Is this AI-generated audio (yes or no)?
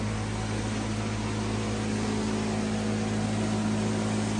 no